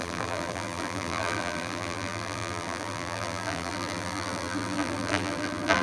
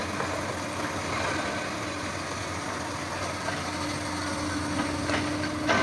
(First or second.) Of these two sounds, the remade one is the first